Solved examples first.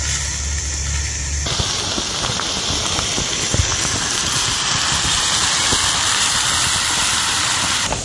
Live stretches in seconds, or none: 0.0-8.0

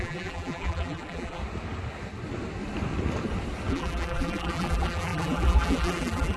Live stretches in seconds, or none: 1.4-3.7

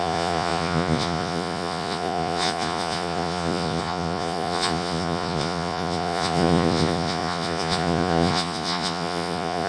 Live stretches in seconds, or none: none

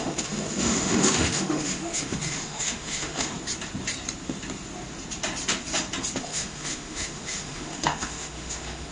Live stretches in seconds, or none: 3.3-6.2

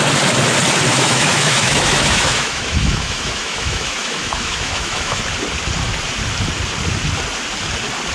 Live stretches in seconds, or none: 0.0-0.9; 5.2-8.1

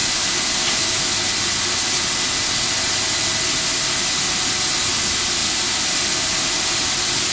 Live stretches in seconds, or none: 0.0-7.3

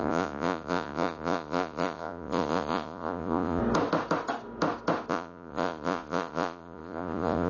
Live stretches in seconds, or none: 3.6-5.1